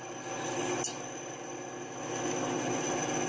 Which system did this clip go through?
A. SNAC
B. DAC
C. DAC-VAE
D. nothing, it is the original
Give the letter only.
D